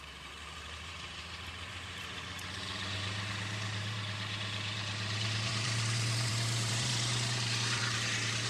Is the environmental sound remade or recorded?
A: remade